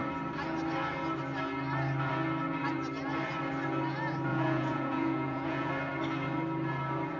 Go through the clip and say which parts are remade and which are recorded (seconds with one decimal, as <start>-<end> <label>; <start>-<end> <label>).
0.0-4.3 recorded; 4.3-5.7 remade; 5.7-7.2 recorded